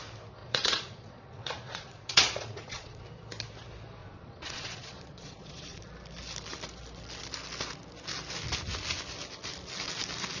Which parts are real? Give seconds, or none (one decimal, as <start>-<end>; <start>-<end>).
0.0-0.4; 3.0-4.0; 5.8-10.4